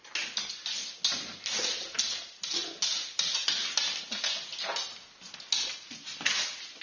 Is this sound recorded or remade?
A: recorded